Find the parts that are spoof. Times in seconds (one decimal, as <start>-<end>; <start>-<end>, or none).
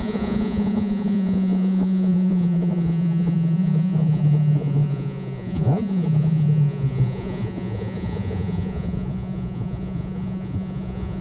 0.0-11.2